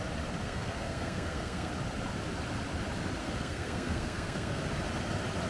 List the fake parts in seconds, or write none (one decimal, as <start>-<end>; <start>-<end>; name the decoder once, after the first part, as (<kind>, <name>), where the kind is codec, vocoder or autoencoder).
0.4-1.7 (codec, SNAC); 3.2-4.6

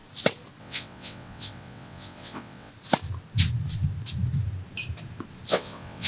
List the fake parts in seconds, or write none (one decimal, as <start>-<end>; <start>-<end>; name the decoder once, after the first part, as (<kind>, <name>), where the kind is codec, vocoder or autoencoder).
0.6-2.7 (vocoder, WaveNeXt); 5.5-6.1

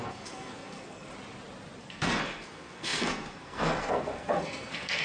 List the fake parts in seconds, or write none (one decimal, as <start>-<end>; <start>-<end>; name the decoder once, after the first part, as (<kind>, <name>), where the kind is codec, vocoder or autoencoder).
0.0-1.1 (codec, SNAC); 1.8-5.0